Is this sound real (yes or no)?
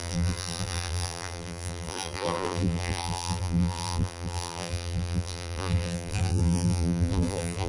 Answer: no